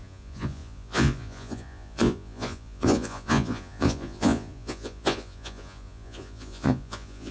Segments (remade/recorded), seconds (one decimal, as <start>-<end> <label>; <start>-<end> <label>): 0.0-7.3 remade